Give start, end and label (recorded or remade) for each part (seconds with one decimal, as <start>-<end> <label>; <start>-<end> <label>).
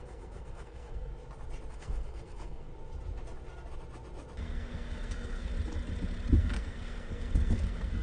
0.0-1.1 remade; 1.1-1.7 recorded; 1.7-2.7 remade; 2.7-4.4 recorded; 4.4-5.5 remade; 5.5-6.4 recorded; 6.4-8.0 remade